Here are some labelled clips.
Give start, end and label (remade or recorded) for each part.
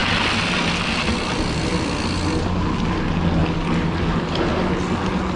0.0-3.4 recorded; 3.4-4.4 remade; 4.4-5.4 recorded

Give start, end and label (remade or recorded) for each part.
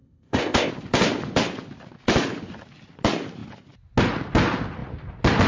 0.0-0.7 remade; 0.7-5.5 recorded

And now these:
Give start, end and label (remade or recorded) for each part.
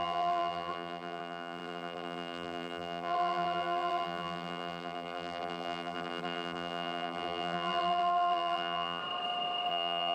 0.0-9.0 remade; 9.0-9.7 recorded; 9.7-10.1 remade